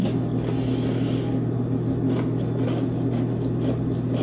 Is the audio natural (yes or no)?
yes